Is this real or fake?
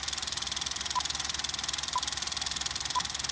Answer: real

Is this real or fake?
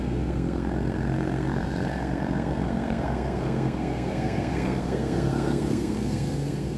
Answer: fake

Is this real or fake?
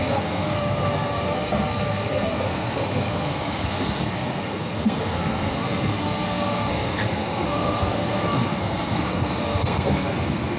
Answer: fake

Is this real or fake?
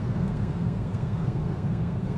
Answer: fake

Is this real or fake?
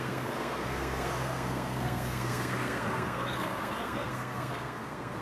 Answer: fake